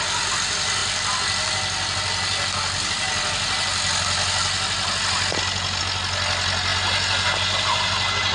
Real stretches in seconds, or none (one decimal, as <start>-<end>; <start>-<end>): 0.0-8.3